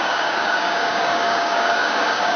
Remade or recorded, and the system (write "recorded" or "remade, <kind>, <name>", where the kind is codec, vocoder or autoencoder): remade, codec, DAC